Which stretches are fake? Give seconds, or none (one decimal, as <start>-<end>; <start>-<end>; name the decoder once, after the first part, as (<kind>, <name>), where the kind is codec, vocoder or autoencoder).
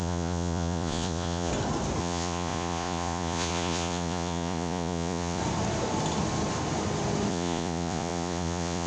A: 0.0-1.5 (vocoder, Vocos); 2.0-5.4; 7.3-8.9